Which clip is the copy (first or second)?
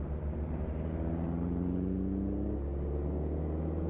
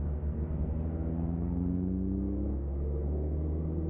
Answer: second